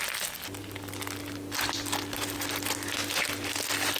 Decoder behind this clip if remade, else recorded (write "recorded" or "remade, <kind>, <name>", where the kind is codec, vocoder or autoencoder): recorded